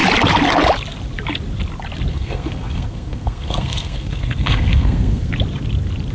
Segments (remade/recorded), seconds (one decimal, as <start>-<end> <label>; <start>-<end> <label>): 0.0-2.1 recorded; 2.1-5.3 remade; 5.3-6.1 recorded